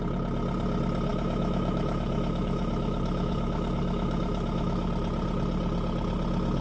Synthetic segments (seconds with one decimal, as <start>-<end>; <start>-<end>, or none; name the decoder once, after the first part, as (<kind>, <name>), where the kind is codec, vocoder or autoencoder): 1.1-4.9 (autoencoder, DAC-VAE)